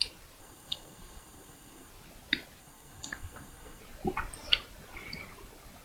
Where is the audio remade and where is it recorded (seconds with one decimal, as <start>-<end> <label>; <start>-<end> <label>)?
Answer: 0.0-0.4 recorded; 0.4-1.9 remade; 1.9-2.6 recorded; 2.6-3.8 remade; 3.8-5.8 recorded